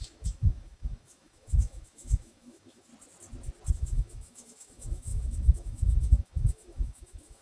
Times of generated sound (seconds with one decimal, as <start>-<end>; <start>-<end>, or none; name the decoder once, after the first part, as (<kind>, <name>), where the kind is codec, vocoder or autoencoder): 0.0-2.9 (autoencoder, DAC-VAE); 3.7-7.4